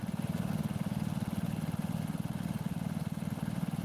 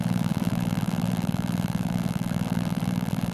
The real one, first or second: first